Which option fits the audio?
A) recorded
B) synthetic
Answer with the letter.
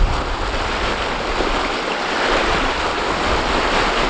A